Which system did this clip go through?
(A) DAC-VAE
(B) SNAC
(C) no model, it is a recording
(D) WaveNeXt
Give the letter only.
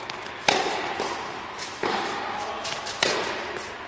C